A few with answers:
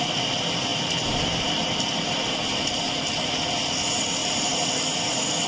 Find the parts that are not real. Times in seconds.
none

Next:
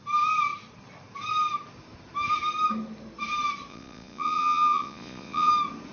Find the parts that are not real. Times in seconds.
3.7-5.5 (vocoder, Vocos)

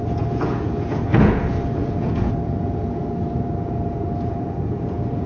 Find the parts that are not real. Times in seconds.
0.0-3.0 (vocoder, Vocos); 3.6-5.3

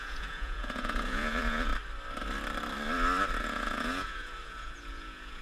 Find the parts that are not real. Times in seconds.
0.0-1.7 (vocoder, Vocos); 3.4-5.4

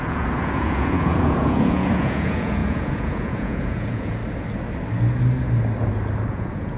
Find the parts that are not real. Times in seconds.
0.0-4.2 (vocoder, Vocos); 6.3-6.8

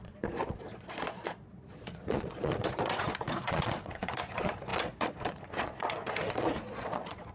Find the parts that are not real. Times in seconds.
0.0-7.3 (vocoder, Vocos)